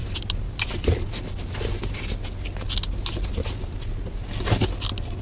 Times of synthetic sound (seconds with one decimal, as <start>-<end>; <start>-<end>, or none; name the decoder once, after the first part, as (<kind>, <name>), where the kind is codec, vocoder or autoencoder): none